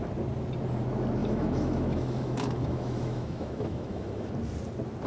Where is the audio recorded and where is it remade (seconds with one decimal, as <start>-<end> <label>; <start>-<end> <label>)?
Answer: 0.0-1.2 recorded; 1.2-4.3 remade; 4.3-5.1 recorded